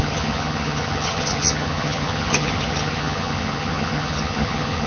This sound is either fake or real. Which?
fake